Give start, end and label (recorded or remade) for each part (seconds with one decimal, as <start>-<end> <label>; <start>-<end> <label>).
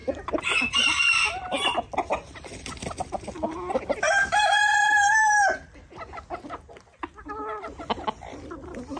0.0-5.3 remade; 5.3-9.0 recorded